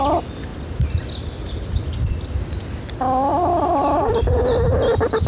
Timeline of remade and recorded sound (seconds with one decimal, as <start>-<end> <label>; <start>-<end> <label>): 0.0-0.5 recorded; 0.5-2.8 remade; 2.8-3.3 recorded; 3.3-5.3 remade